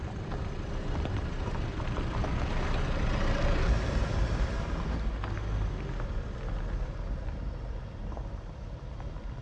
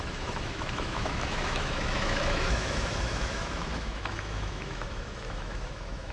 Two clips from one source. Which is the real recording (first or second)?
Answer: first